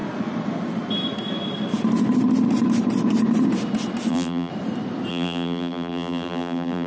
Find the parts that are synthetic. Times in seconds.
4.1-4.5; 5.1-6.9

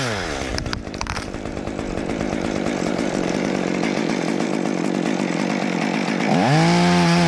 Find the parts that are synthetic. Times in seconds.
0.5-4.5

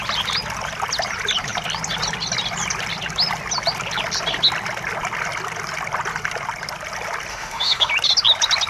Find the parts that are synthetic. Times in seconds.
7.3-7.9